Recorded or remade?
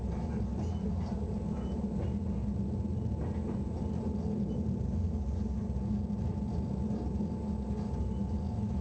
recorded